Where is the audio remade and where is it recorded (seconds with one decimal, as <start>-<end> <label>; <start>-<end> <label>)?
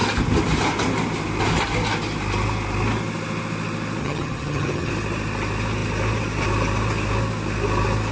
0.0-4.0 recorded; 4.0-4.9 remade; 4.9-8.1 recorded